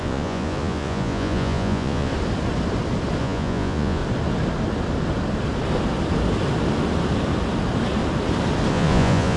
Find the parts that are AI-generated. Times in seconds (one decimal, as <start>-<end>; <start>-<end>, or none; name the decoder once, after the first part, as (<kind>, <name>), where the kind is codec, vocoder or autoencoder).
0.0-2.1 (vocoder, Vocos); 3.2-4.0; 8.7-9.4